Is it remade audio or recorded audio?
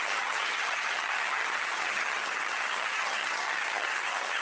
remade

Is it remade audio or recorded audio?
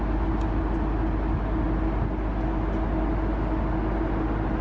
recorded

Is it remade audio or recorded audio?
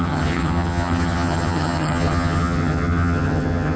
remade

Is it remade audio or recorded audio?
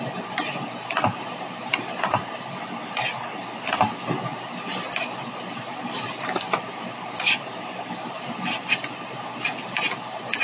recorded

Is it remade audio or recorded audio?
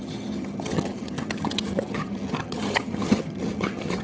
remade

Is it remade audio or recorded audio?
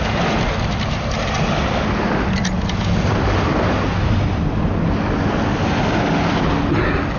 recorded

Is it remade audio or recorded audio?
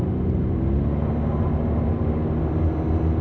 recorded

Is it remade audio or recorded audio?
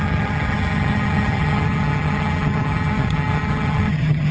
remade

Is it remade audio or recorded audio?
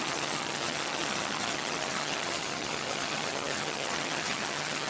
remade